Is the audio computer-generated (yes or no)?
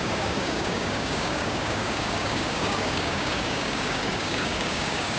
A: yes